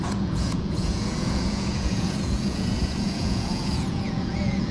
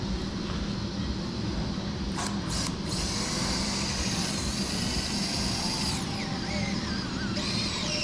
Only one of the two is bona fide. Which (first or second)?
second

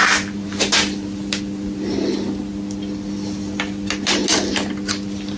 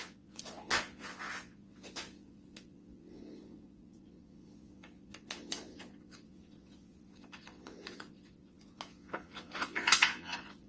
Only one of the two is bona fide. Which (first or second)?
first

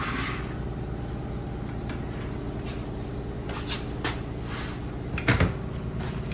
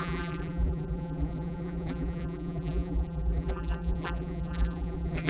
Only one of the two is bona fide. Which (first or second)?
first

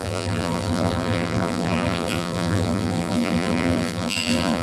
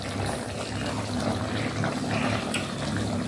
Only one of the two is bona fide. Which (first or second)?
second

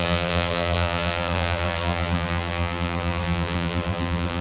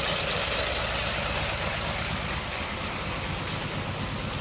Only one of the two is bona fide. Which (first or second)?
second